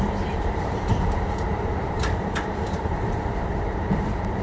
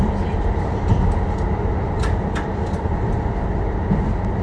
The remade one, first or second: first